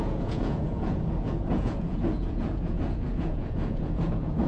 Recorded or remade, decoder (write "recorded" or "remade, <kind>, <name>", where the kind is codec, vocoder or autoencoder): remade, vocoder, Vocos